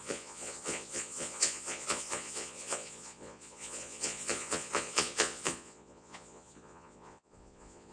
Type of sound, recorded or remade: remade